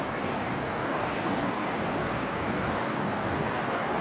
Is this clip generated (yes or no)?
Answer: yes